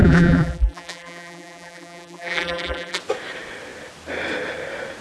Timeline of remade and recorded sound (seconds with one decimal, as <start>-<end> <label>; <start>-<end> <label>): 0.0-3.0 remade; 3.0-5.0 recorded